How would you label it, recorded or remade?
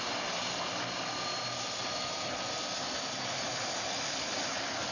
recorded